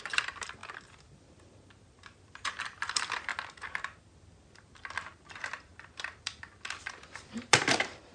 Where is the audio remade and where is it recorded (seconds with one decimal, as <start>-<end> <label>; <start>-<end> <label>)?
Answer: 0.0-0.6 remade; 0.6-2.2 recorded; 2.2-3.3 remade; 3.3-4.3 recorded; 4.3-5.7 remade; 5.7-6.2 recorded; 6.2-8.1 remade